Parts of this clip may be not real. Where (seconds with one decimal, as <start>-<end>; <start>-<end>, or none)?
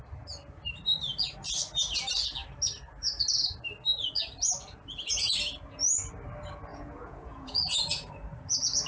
6.7-8.1